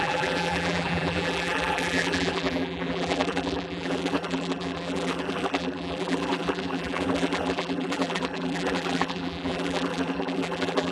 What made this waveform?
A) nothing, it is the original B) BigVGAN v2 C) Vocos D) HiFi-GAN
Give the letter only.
B